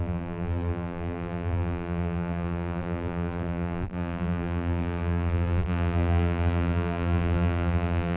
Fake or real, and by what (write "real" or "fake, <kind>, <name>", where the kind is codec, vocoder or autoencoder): fake, vocoder, BigVGAN v2